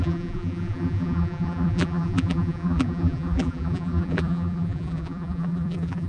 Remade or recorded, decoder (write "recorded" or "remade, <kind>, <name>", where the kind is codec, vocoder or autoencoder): remade, vocoder, BigVGAN v2